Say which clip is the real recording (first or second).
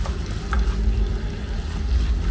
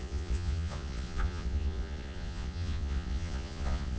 first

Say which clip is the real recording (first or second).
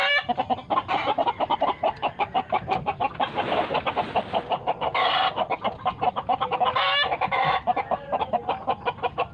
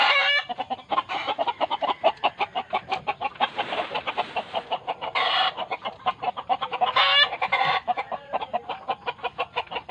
first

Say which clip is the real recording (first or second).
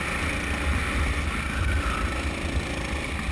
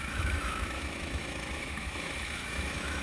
first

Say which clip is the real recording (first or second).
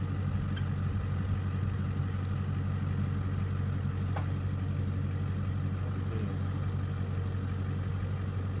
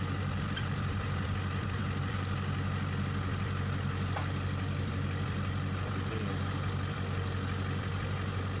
first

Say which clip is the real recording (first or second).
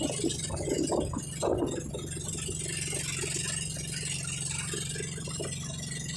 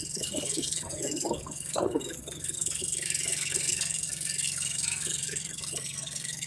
first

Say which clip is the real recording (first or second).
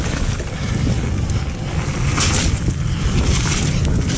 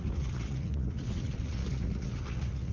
first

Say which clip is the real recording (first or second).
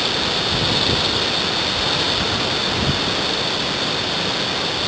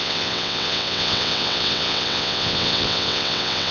first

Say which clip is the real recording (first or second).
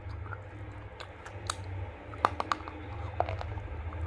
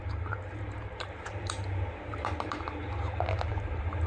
first